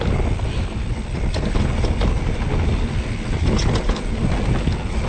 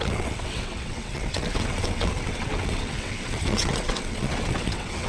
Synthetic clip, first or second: second